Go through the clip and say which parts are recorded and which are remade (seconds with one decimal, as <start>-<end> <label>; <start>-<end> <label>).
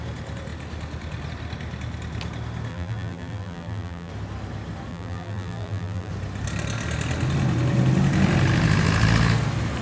0.0-2.7 recorded; 2.7-4.1 remade; 4.1-4.9 recorded; 4.9-6.1 remade; 6.1-9.8 recorded